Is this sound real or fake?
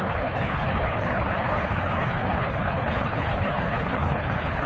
fake